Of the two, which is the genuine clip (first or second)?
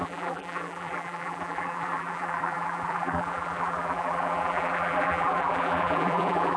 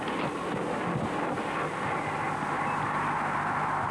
second